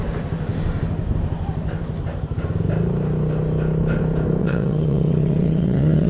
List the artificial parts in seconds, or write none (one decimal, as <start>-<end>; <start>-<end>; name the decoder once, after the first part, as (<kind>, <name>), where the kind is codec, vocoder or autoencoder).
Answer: 4.4-6.1 (vocoder, WaveNeXt)